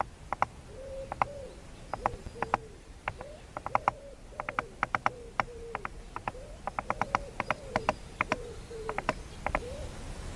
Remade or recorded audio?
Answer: recorded